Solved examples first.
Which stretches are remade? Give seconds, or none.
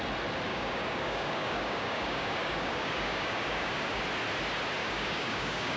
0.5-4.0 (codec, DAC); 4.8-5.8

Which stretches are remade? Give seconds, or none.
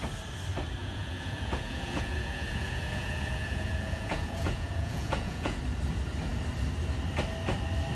0.8-5.6 (vocoder, Vocos)